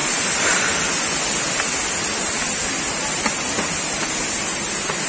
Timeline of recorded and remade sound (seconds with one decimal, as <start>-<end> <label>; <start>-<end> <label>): 0.0-1.0 remade; 1.0-5.1 recorded

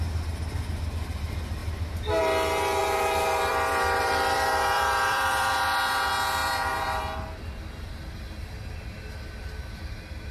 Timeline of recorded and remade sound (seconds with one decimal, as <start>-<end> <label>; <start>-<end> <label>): 0.0-2.8 recorded; 2.8-5.5 remade; 5.5-6.4 recorded; 6.4-7.0 remade; 7.0-10.3 recorded